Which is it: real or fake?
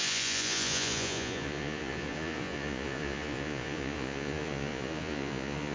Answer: fake